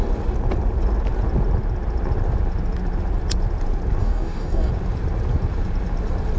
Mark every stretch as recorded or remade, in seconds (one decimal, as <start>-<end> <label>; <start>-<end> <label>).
0.0-4.0 recorded; 4.0-4.7 remade; 4.7-6.4 recorded